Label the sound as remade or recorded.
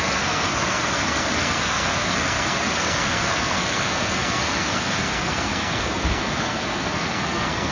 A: remade